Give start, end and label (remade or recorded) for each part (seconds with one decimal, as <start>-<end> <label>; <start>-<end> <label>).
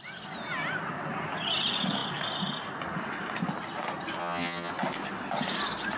0.0-4.2 recorded; 4.2-4.7 remade; 4.7-6.0 recorded